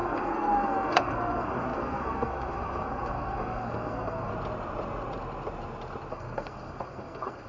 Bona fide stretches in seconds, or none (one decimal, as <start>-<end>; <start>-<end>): 4.3-6.1